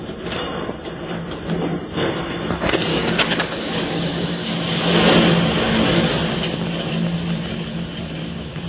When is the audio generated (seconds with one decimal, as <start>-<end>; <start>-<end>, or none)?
2.9-4.5